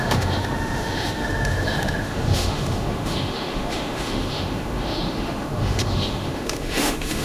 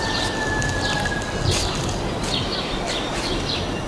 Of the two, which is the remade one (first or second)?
first